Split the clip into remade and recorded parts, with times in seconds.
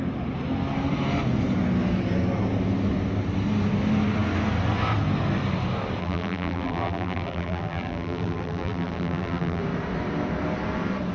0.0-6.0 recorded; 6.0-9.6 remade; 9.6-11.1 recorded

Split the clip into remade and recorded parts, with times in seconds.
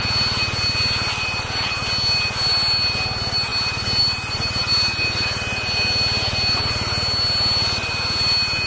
0.0-8.7 recorded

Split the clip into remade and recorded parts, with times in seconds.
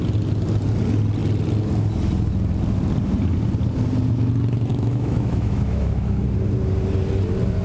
0.0-4.7 recorded; 4.7-6.2 remade; 6.2-7.6 recorded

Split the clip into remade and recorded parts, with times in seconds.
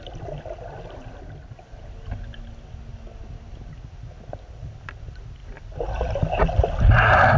0.0-7.4 recorded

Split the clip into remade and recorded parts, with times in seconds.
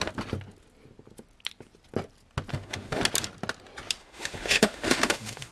0.0-2.5 recorded; 2.5-3.0 remade; 3.0-4.0 recorded; 4.0-5.5 remade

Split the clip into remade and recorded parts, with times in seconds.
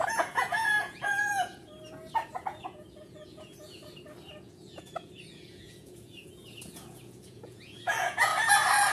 0.0-1.5 remade; 1.5-2.4 recorded; 2.4-3.8 remade; 3.8-4.4 recorded; 4.4-8.3 remade; 8.3-8.9 recorded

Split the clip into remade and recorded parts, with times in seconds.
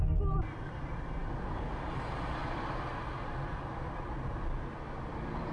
0.0-5.5 recorded